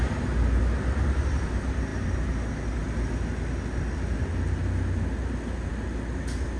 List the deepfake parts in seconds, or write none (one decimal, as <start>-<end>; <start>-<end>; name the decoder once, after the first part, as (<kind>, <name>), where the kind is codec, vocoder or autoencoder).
none